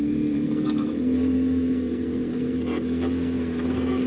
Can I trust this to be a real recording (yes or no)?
no